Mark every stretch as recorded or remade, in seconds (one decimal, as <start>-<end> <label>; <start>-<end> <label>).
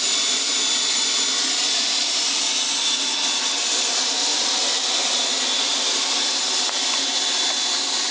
0.0-8.1 recorded